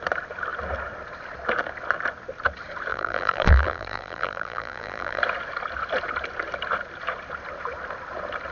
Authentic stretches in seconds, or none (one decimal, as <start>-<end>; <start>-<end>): 0.0-2.9; 5.2-8.5